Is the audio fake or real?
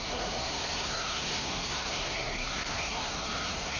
fake